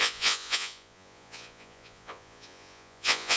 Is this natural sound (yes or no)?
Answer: no